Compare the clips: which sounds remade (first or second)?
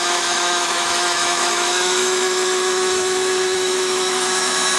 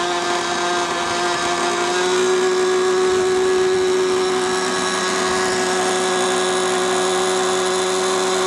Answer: first